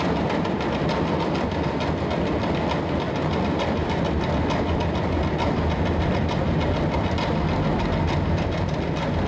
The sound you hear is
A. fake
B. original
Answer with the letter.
B